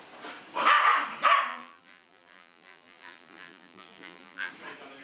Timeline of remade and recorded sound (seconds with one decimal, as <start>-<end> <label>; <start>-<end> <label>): 0.0-1.5 recorded; 1.5-4.5 remade; 4.5-5.0 recorded